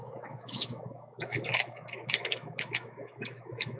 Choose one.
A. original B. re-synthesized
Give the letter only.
B